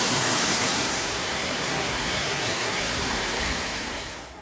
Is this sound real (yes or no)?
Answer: no